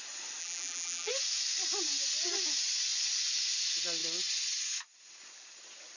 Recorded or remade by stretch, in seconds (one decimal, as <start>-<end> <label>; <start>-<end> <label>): 0.0-0.4 recorded; 0.4-1.1 remade; 1.1-6.0 recorded